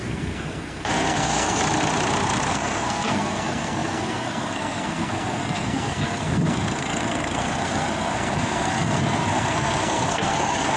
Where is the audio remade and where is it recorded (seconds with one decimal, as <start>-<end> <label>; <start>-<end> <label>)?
0.0-1.6 remade; 1.6-2.5 recorded; 2.5-10.8 remade